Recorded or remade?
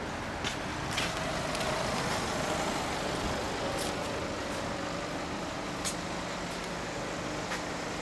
recorded